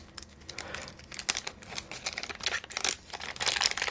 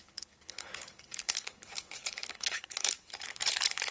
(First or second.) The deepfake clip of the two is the second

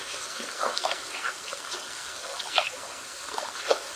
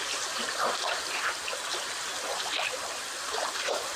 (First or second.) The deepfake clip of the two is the first